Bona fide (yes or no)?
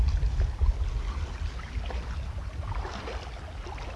yes